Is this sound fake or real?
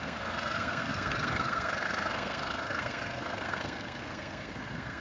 fake